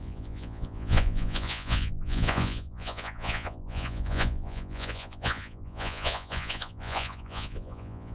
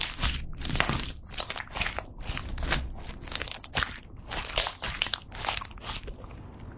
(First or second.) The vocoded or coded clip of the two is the first